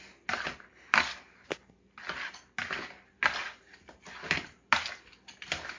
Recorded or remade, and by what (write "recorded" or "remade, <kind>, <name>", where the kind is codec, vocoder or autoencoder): recorded